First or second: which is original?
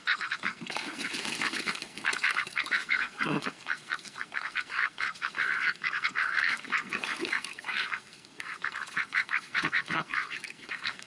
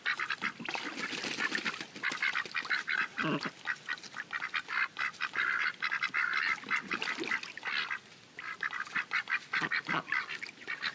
second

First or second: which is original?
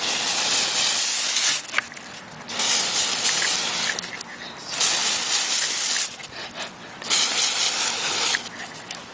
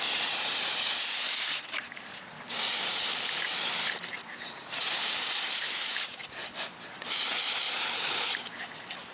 first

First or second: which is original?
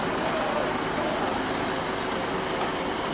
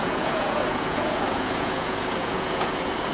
first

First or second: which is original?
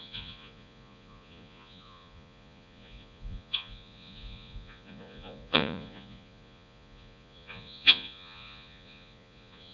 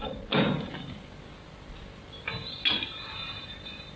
second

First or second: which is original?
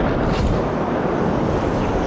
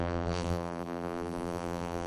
first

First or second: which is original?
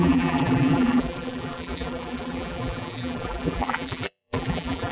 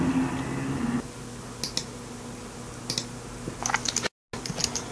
second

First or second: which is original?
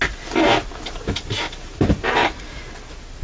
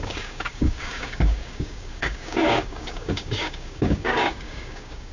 first